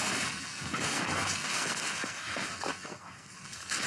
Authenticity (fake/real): fake